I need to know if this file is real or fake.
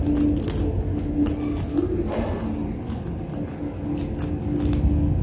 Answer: real